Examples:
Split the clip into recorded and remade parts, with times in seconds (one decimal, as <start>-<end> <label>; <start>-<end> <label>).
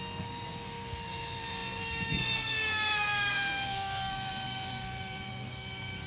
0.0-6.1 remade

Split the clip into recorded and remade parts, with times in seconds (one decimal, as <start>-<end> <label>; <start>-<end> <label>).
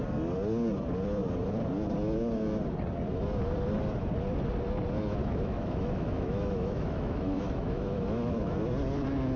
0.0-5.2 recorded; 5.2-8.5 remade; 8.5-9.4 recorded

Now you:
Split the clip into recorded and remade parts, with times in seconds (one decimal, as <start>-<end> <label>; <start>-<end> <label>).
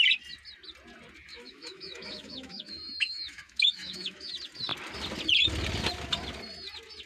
0.0-1.3 recorded; 1.3-4.3 remade; 4.3-7.1 recorded